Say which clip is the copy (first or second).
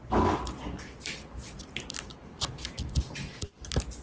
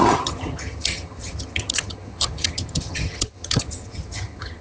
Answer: second